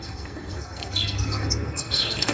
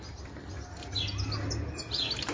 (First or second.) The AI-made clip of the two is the first